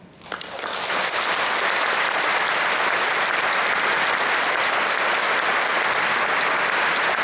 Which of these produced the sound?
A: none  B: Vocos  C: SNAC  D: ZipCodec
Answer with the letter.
A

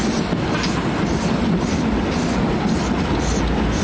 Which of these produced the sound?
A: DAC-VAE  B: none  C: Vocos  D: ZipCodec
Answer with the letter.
B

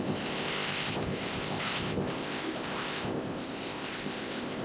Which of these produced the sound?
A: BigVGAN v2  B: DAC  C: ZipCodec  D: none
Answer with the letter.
C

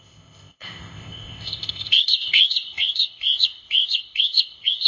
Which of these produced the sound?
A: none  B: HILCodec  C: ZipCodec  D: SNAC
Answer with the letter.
C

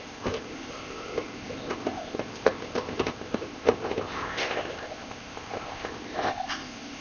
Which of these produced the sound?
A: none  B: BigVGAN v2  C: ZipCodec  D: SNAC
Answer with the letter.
C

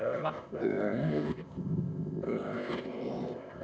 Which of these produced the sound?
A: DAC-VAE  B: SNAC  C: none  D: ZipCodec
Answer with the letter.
D